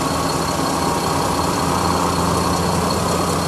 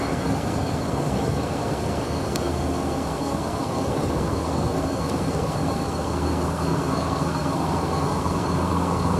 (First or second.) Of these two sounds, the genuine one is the first